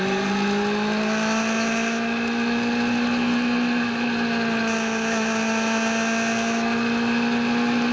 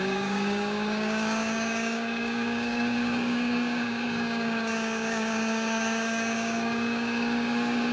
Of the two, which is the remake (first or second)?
second